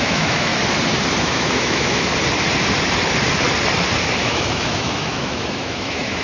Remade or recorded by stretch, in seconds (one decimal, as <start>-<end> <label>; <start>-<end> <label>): 0.0-0.5 remade; 0.5-1.2 recorded; 1.2-2.1 remade; 2.1-4.2 recorded; 4.2-6.2 remade